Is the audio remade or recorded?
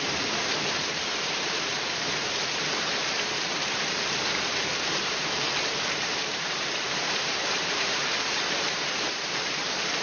remade